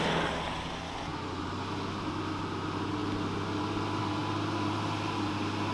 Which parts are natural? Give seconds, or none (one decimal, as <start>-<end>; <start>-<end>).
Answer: 0.0-5.7